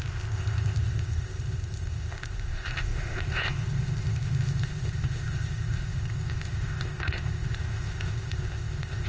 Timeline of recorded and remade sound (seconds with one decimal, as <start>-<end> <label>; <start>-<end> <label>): 0.0-9.1 remade

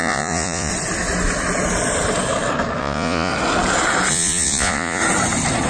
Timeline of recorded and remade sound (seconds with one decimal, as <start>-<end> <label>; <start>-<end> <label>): 0.0-0.7 remade; 0.7-2.8 recorded; 2.8-3.3 remade; 3.3-4.1 recorded; 4.1-5.0 remade; 5.0-5.7 recorded